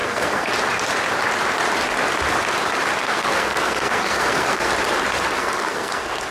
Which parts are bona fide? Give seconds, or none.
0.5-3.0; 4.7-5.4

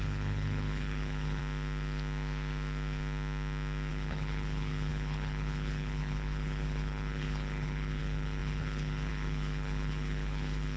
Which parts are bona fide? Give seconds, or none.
1.4-3.9

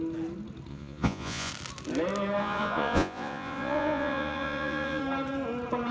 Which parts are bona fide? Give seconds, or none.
0.0-0.7; 1.5-2.4; 5.0-5.9

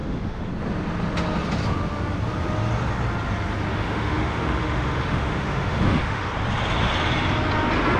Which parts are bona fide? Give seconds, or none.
0.5-3.7; 6.3-8.0